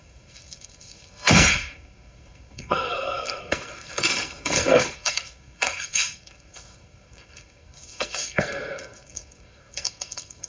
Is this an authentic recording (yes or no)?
no